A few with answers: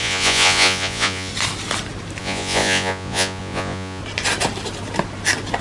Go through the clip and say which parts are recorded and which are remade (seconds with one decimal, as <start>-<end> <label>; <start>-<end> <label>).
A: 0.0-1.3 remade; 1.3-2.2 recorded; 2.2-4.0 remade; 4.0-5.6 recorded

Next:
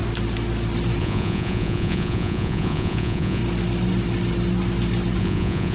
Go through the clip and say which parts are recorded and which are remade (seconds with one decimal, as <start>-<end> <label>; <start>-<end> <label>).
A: 0.0-1.0 recorded; 1.0-3.4 remade; 3.4-5.2 recorded; 5.2-5.7 remade

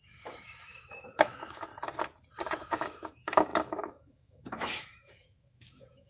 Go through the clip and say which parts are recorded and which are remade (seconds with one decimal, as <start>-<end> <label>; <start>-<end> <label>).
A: 0.0-1.7 remade; 1.7-2.6 recorded; 2.6-6.1 remade

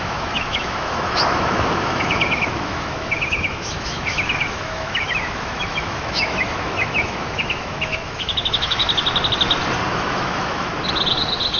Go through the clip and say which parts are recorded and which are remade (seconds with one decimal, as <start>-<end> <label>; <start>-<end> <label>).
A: 0.0-8.8 remade; 8.8-9.9 recorded; 9.9-10.7 remade; 10.7-11.6 recorded

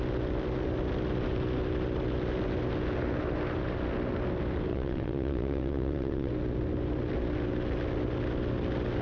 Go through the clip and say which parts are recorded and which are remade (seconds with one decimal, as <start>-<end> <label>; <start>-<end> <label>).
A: 0.0-4.7 recorded; 4.7-6.3 remade; 6.3-9.0 recorded

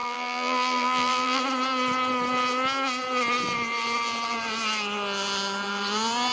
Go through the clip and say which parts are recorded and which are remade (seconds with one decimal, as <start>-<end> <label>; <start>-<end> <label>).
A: 0.0-1.4 remade; 1.4-6.3 recorded